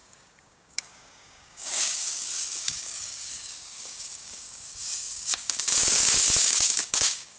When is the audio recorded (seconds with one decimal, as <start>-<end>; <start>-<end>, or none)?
none